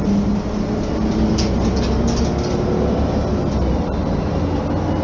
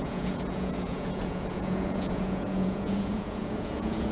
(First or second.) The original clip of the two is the first